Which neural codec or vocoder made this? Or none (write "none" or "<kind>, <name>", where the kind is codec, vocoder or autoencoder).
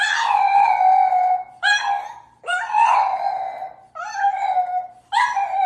none